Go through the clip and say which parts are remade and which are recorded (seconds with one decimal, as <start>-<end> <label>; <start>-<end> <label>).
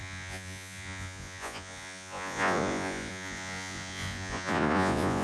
0.0-5.2 remade